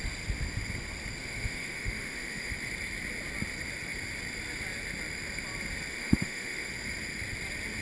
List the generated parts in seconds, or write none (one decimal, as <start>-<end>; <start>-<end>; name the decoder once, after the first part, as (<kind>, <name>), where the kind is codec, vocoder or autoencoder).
1.2-2.5 (autoencoder, DAC-VAE); 5.9-6.7